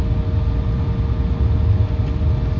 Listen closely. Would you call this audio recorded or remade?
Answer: recorded